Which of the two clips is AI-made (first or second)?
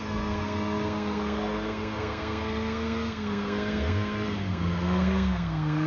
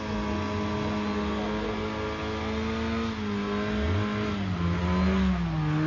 first